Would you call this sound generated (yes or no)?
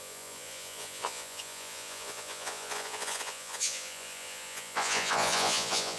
yes